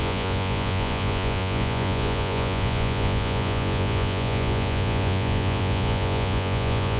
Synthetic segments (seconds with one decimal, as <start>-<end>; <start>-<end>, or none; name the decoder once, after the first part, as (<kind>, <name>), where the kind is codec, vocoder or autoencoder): 0.0-7.0 (vocoder, Vocos)